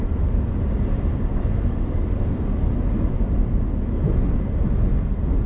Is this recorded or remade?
recorded